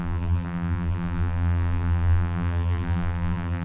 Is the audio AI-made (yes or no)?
yes